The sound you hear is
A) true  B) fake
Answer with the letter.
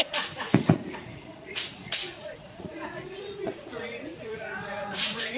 B